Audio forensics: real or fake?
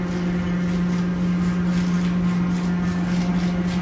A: real